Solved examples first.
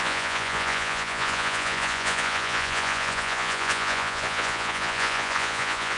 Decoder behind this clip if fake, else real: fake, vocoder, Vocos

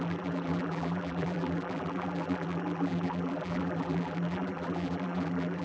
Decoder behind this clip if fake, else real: fake, vocoder, BigVGAN v2